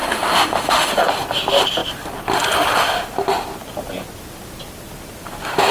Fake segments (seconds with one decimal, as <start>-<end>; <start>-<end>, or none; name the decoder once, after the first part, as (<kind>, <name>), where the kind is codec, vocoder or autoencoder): 0.0-0.9 (autoencoder, DAC-VAE)